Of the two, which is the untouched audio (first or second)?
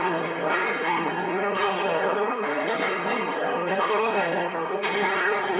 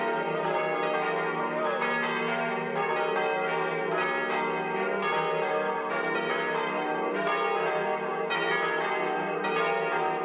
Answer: second